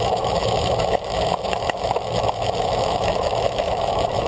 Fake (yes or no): yes